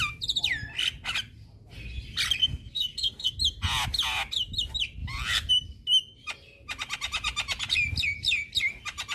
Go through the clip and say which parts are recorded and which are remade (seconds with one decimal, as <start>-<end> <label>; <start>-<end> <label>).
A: 0.0-2.4 recorded; 2.4-3.4 remade; 3.4-9.1 recorded